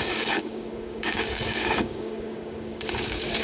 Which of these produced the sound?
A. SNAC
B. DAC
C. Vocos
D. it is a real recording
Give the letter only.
B